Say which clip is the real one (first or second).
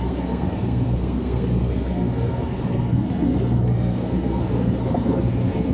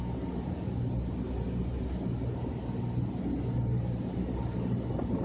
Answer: second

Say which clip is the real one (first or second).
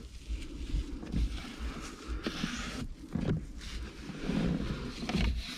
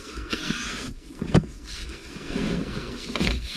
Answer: first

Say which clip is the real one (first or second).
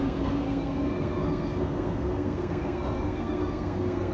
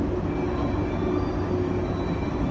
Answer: second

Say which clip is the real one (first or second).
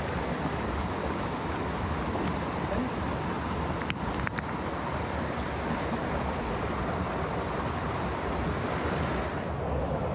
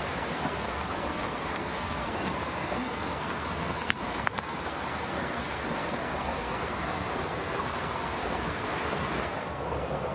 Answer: first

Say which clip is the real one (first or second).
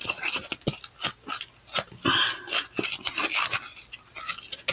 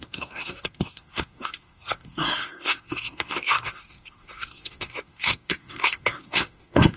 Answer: first